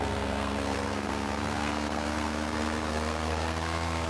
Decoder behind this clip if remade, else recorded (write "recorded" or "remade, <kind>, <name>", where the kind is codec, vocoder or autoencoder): remade, codec, SNAC